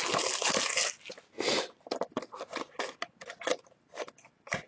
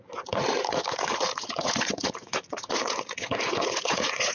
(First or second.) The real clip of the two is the first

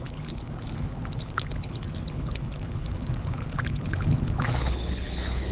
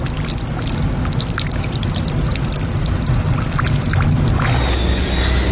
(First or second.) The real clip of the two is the second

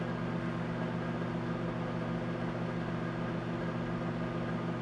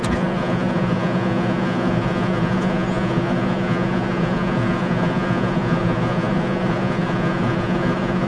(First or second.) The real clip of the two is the first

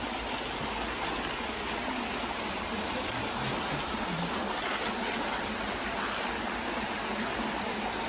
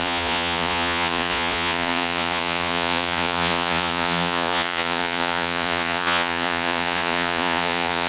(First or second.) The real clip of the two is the first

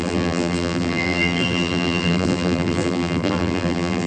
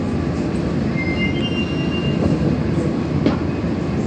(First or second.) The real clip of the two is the second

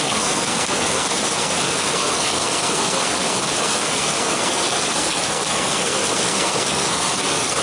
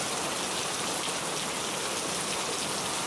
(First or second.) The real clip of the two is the second